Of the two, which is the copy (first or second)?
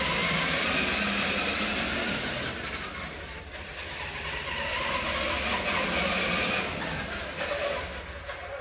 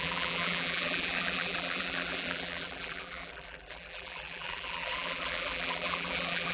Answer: second